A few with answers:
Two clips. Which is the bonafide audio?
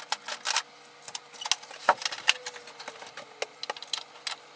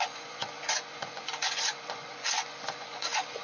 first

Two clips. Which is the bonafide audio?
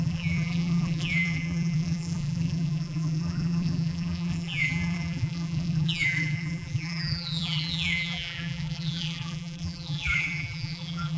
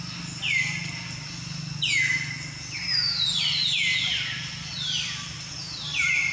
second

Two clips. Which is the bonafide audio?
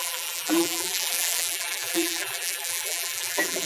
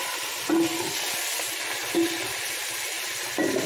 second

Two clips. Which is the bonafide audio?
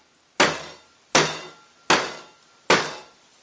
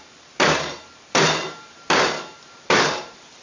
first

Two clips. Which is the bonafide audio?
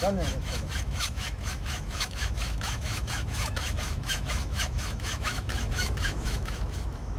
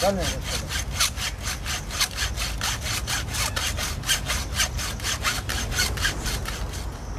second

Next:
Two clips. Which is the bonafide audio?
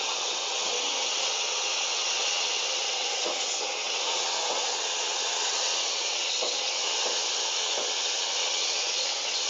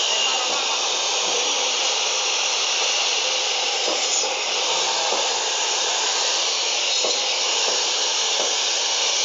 second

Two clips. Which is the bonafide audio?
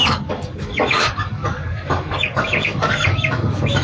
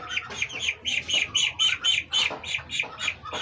second